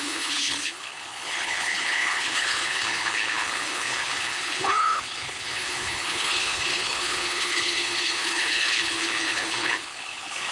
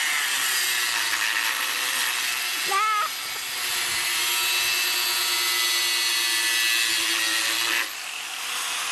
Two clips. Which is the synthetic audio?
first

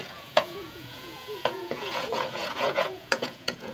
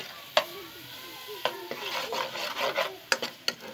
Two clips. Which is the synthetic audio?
first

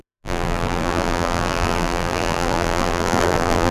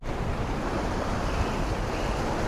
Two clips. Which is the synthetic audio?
first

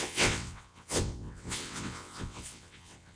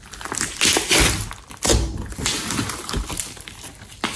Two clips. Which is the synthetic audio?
first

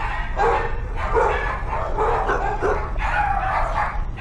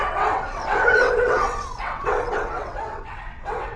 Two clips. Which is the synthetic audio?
second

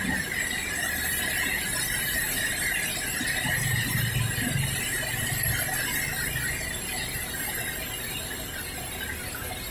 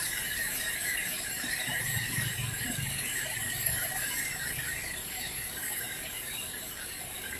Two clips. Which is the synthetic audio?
second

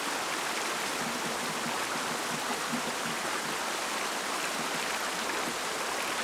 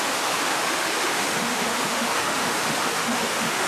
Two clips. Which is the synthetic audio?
second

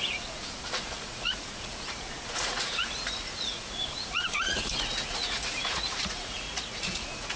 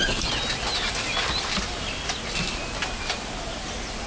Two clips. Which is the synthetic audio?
first